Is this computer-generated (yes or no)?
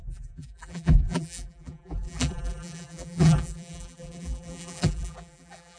yes